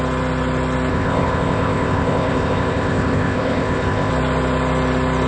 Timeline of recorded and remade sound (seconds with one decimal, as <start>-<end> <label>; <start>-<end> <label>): 0.0-0.9 recorded; 0.9-4.1 remade; 4.1-5.3 recorded